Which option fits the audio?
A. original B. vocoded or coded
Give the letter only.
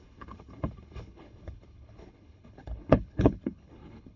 B